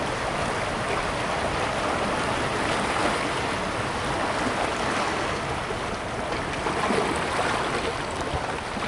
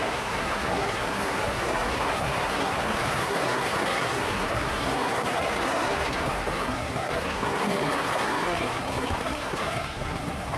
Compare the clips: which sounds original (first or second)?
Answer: first